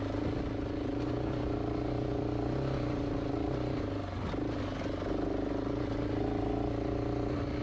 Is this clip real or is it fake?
real